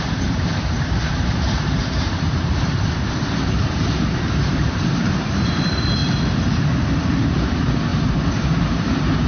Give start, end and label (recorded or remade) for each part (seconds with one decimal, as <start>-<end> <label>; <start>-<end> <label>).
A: 0.0-6.0 remade; 6.0-7.0 recorded; 7.0-9.3 remade

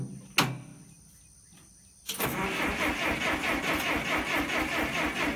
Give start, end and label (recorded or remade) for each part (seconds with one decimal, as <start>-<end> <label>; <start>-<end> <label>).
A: 0.0-5.4 recorded

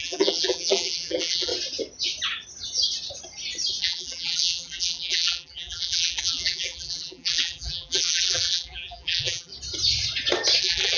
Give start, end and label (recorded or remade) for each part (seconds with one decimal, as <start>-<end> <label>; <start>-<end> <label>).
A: 0.0-1.5 remade; 1.5-3.8 recorded; 3.8-9.5 remade; 9.5-10.6 recorded; 10.6-11.0 remade

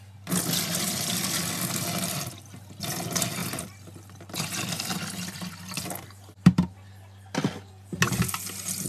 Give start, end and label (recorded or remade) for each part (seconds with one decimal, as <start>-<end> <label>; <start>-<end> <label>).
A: 0.0-3.4 recorded; 3.4-7.7 remade; 7.7-8.9 recorded